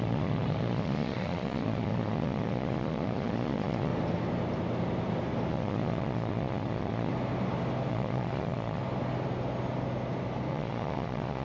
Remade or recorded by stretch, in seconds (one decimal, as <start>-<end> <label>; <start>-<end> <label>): 0.0-3.9 remade; 3.9-5.5 recorded; 5.5-7.1 remade; 7.1-7.9 recorded; 7.9-8.8 remade; 8.8-10.5 recorded; 10.5-11.4 remade